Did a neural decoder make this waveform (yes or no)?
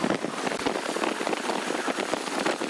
no